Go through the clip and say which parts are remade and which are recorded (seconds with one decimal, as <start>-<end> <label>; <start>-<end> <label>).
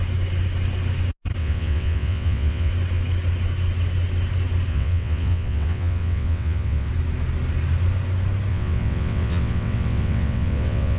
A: 0.0-1.4 recorded; 1.4-2.7 remade; 2.7-4.7 recorded; 4.7-6.9 remade; 6.9-8.5 recorded; 8.5-11.0 remade